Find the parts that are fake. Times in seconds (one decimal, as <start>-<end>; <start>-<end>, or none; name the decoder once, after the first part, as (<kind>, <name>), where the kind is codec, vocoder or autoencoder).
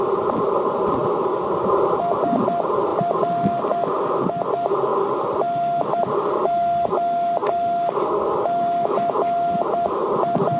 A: none